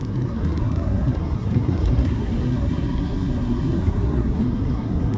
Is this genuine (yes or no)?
no